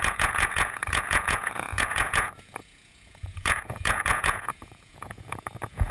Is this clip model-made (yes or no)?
yes